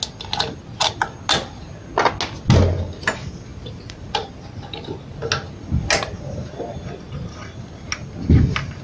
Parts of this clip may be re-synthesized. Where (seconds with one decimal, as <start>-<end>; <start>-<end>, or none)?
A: 3.5-4.3